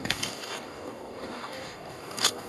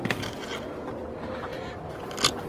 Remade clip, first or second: first